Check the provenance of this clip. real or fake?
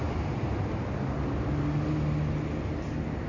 real